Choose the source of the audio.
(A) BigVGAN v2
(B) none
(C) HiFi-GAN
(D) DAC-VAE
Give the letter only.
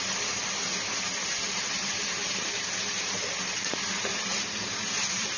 A